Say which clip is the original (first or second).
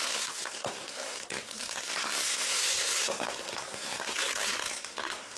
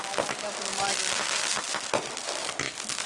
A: second